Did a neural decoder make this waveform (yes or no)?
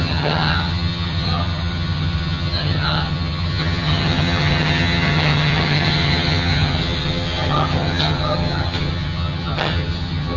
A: yes